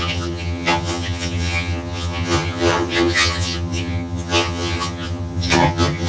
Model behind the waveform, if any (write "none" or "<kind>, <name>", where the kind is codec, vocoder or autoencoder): vocoder, HiFi-GAN